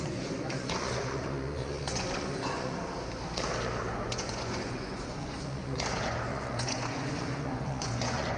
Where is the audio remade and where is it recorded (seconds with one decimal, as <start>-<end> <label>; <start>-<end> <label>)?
0.0-2.8 remade; 2.8-3.9 recorded; 3.9-8.4 remade